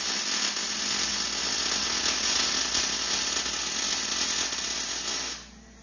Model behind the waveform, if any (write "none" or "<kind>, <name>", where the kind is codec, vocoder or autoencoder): none